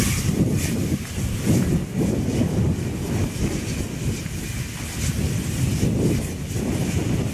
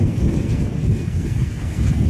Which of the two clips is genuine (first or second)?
first